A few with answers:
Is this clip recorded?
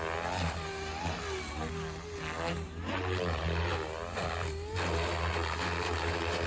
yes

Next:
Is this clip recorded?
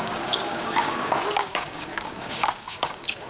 no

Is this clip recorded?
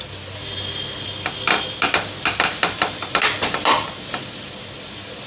yes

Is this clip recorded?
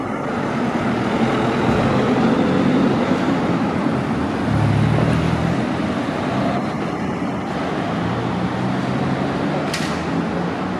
yes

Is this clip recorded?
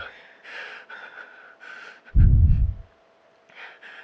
yes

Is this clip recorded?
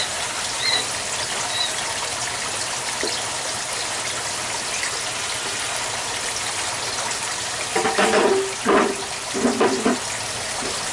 yes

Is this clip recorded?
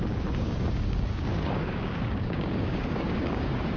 no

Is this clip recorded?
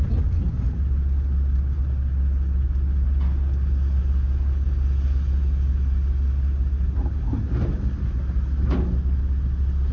yes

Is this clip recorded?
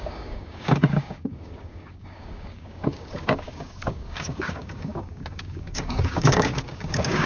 no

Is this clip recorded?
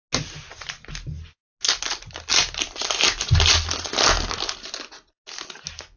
yes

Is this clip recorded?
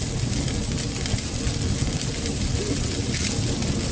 yes